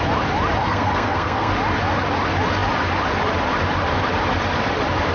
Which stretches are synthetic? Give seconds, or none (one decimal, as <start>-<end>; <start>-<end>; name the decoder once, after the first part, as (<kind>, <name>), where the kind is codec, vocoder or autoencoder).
0.6-1.5 (codec, SNAC)